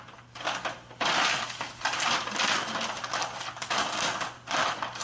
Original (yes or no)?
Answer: yes